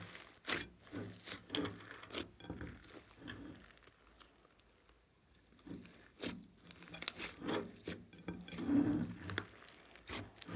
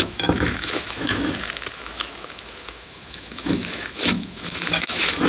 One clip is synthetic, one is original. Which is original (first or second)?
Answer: first